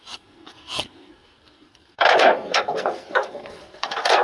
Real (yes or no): no